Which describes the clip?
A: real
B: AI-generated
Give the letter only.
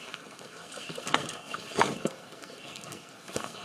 B